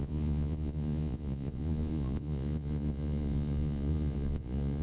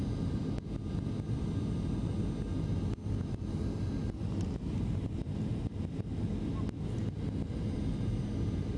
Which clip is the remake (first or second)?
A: first